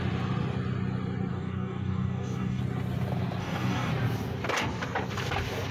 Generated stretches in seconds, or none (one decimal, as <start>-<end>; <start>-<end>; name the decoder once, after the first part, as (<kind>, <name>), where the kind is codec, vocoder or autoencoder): 1.3-2.6 (codec, DAC); 3.4-3.9